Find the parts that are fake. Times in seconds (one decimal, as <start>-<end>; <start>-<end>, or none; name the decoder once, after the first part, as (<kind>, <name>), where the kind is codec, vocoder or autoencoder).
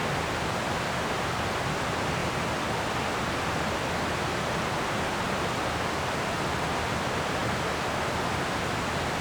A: none